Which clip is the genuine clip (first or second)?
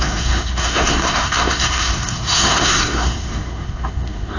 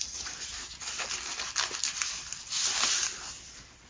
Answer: second